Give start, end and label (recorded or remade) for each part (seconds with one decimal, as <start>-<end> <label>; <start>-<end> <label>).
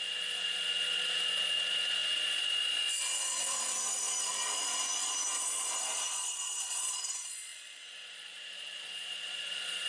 0.0-9.9 remade